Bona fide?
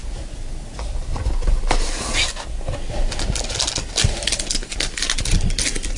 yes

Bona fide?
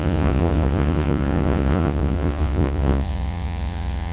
no